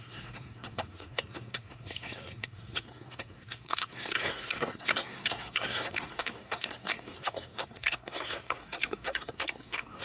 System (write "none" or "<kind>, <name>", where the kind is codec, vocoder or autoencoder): codec, SNAC